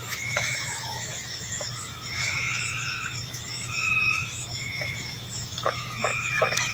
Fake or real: fake